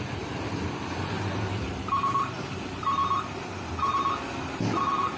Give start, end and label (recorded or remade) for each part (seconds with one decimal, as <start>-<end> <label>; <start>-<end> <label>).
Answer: 0.0-5.2 recorded